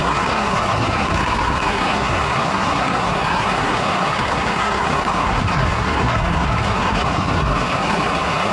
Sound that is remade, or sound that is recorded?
remade